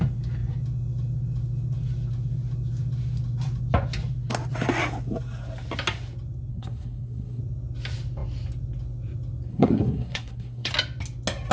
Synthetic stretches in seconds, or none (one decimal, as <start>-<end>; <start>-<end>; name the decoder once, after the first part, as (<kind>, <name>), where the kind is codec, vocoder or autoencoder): 6.5-7.4 (codec, SNAC); 9.5-10.7